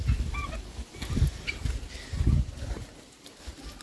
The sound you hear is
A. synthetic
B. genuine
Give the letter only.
B